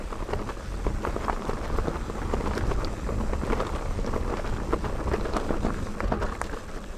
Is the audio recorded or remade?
recorded